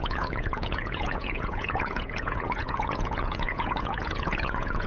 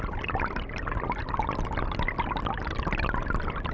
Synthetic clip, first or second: first